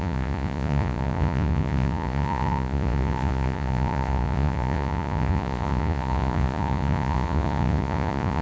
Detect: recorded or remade remade